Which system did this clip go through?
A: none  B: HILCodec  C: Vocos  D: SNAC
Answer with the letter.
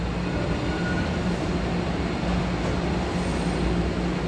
A